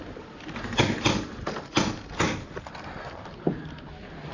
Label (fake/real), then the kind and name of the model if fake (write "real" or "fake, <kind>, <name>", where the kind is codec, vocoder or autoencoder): real